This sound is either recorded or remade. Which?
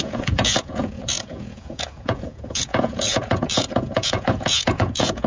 remade